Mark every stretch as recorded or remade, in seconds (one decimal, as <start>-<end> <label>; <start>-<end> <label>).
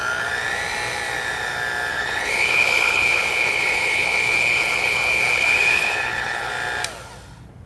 0.0-1.9 recorded; 1.9-6.5 remade; 6.5-7.7 recorded